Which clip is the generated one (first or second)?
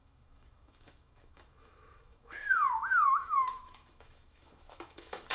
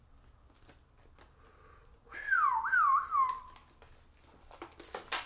first